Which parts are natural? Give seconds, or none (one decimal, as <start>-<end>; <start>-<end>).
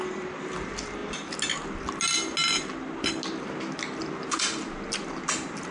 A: 0.0-5.7